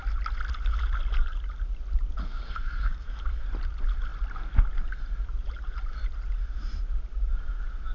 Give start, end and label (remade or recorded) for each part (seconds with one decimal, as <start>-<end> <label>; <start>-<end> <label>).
0.0-2.2 recorded; 2.2-3.2 remade; 3.2-7.9 recorded